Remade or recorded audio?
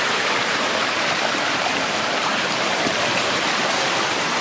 remade